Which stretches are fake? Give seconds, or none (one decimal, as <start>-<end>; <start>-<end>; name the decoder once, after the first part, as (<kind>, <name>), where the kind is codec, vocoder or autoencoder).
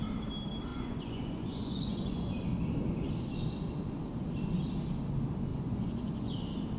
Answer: 0.7-2.3 (vocoder, Vocos); 5.5-6.3